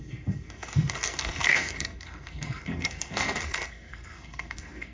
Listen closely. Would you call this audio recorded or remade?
remade